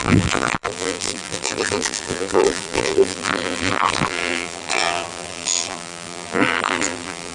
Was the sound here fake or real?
fake